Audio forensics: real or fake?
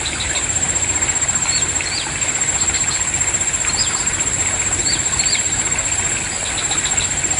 fake